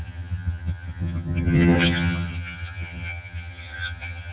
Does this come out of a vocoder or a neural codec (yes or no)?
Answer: yes